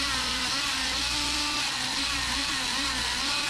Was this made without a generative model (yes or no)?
yes